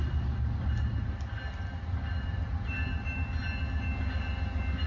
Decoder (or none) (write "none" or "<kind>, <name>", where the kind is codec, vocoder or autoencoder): none